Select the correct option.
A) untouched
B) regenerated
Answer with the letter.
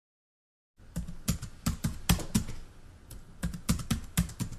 A